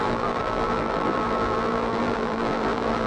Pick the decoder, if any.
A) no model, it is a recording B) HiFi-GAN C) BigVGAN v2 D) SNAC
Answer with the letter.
C